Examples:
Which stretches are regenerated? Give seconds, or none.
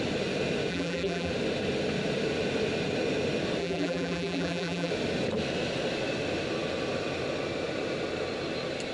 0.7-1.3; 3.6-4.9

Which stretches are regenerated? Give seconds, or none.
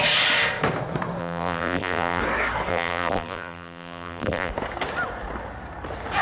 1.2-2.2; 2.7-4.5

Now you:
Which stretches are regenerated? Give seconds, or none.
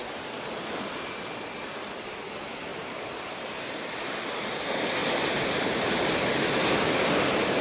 2.7-3.8; 5.0-5.9